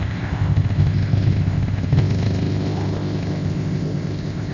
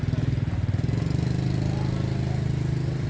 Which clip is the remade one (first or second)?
first